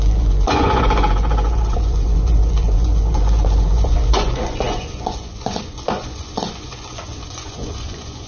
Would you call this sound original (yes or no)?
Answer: no